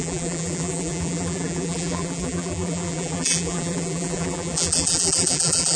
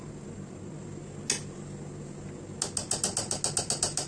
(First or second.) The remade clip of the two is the first